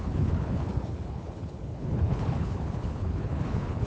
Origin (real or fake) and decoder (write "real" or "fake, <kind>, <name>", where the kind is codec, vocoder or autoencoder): fake, codec, HILCodec